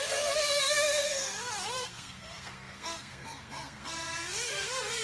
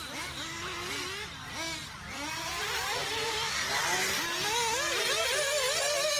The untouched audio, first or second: second